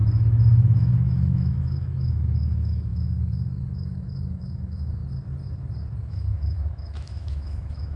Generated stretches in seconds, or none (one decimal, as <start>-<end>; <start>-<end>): 0.0-5.0; 6.0-8.0